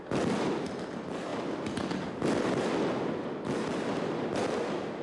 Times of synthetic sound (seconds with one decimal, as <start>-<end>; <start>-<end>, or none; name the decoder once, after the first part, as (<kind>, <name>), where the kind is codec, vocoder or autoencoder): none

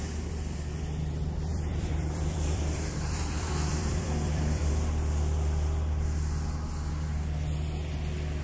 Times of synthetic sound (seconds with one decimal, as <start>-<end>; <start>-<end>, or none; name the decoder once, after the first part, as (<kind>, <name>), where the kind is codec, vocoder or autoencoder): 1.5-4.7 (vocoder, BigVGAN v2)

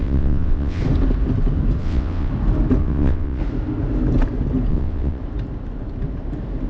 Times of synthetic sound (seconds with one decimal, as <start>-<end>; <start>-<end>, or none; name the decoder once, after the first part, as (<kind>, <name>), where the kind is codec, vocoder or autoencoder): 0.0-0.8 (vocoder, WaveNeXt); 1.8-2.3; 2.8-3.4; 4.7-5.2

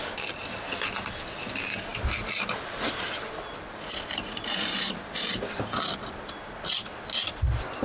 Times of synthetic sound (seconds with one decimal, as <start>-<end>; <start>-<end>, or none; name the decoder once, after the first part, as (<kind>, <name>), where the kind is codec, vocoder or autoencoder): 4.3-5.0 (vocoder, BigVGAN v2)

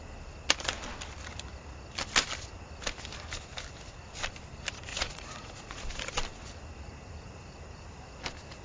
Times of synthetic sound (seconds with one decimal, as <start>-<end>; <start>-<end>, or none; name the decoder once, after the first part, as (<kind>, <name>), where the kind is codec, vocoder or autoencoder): 4.9-6.1 (vocoder, Vocos)

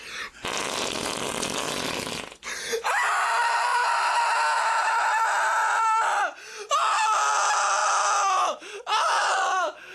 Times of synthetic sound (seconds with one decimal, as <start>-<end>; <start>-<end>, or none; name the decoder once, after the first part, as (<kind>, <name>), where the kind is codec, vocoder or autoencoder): 3.7-4.2 (vocoder, BigVGAN v2)